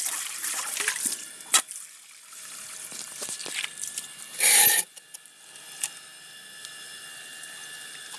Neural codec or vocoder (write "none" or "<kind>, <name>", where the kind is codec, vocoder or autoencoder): vocoder, BigVGAN v2